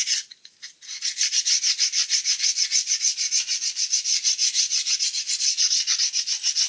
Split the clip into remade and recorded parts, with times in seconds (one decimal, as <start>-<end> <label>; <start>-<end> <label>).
0.0-2.0 recorded; 2.0-5.5 remade; 5.5-6.7 recorded